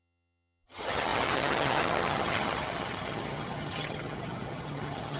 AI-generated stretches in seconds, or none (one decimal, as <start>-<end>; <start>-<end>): 0.0-5.2